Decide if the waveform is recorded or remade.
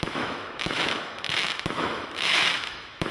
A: remade